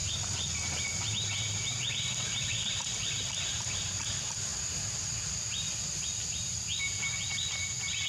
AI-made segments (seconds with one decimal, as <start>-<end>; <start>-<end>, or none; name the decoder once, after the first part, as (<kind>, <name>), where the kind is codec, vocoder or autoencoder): 0.8-4.5 (vocoder, BigVGAN v2)